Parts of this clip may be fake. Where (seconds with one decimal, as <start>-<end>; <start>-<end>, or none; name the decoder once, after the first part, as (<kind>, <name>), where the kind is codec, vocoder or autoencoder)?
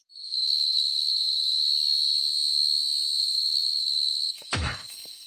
0.0-1.6 (codec, SNAC); 3.2-5.3